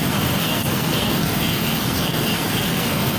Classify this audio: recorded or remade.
remade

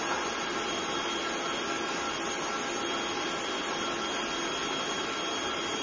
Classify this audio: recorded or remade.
recorded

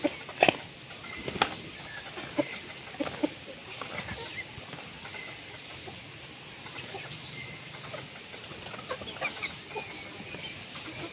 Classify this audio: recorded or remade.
recorded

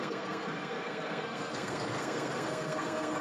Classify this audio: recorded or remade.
remade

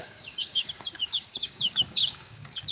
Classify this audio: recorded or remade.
remade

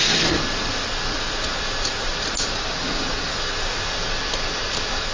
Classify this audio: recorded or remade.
recorded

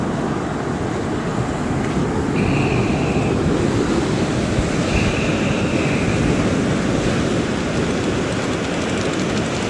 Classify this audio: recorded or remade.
recorded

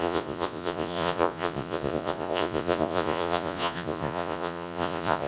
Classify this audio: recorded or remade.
remade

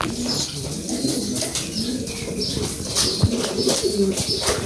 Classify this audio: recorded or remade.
recorded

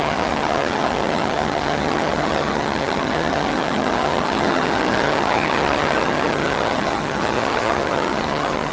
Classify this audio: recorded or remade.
remade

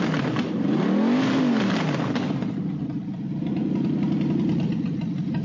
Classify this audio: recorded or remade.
recorded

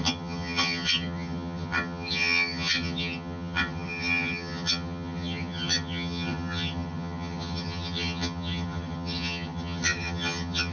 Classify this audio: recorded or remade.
remade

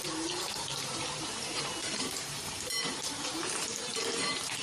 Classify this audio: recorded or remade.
remade